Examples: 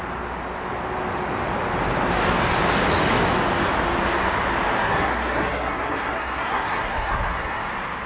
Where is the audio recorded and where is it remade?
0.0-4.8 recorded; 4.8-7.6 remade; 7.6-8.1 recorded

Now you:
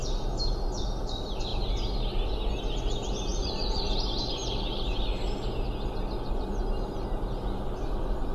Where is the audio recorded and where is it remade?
0.0-3.3 recorded; 3.3-4.0 remade; 4.0-8.3 recorded

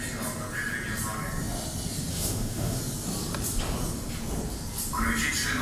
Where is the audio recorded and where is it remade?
0.0-2.1 recorded; 2.1-2.8 remade; 2.8-5.6 recorded

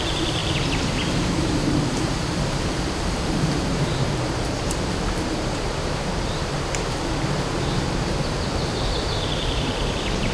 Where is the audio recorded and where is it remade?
0.0-0.4 remade; 0.4-1.4 recorded; 1.4-10.3 remade

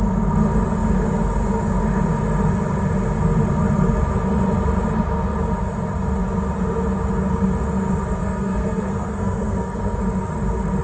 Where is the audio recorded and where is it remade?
0.0-8.2 recorded; 8.2-10.0 remade; 10.0-10.8 recorded